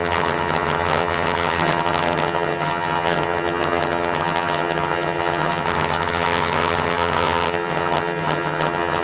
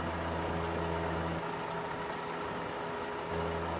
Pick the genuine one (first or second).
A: second